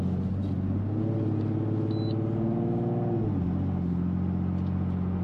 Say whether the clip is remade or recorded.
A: recorded